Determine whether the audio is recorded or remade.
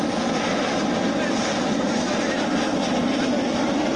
recorded